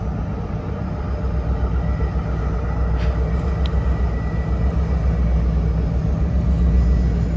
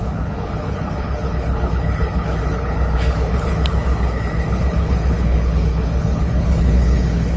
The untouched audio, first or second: first